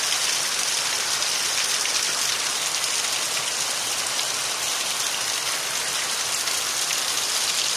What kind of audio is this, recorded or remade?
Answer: recorded